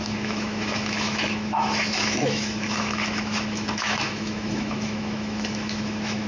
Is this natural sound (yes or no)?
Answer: no